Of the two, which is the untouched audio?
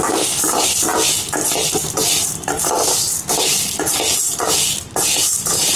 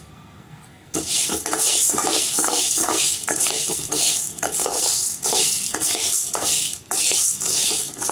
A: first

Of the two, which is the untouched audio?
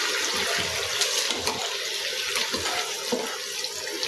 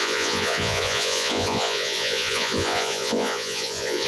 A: first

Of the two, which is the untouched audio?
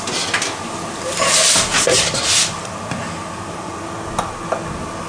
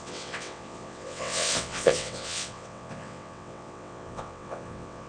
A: first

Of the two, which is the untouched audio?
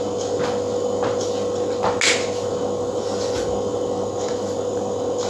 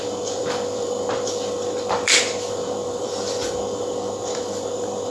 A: first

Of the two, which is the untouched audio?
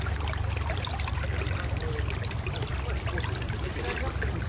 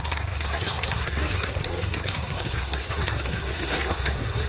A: first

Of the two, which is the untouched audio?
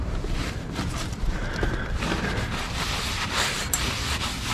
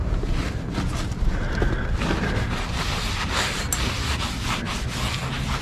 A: second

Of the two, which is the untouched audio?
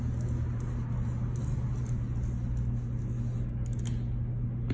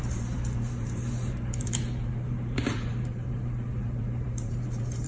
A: first